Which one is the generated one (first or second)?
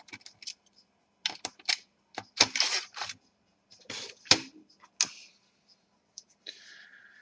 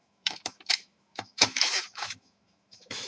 second